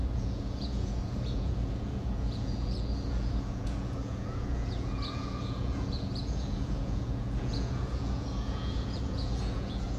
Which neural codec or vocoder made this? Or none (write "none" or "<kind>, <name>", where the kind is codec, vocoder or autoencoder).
vocoder, Vocos